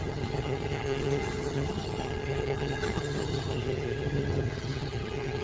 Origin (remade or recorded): remade